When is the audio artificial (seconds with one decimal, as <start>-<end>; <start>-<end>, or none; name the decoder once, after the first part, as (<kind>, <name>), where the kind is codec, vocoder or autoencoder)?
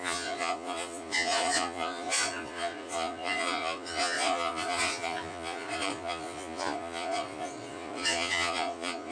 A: 0.0-9.1 (vocoder, Vocos)